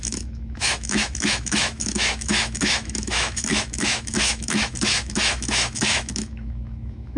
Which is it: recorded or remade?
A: remade